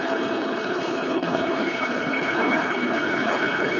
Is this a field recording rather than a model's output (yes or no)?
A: no